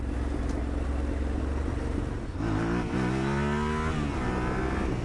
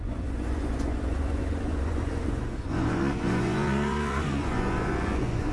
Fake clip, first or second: second